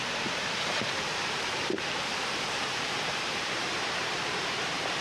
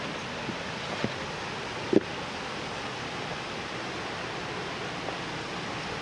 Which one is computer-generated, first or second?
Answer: first